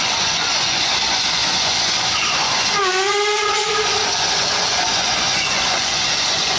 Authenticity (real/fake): fake